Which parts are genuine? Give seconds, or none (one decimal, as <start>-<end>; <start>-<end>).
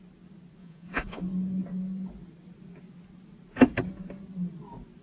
0.0-0.6; 1.2-5.0